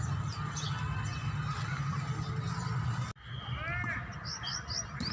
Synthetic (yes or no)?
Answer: no